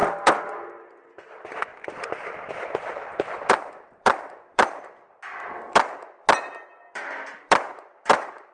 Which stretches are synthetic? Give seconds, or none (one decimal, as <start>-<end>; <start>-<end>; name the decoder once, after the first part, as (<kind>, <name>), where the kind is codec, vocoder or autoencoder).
0.0-1.7 (vocoder, BigVGAN v2); 2.5-8.5